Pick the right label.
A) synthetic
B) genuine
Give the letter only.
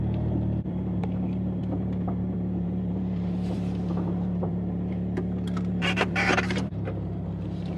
A